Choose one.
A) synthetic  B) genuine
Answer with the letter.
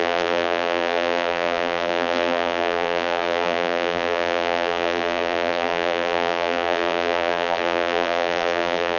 A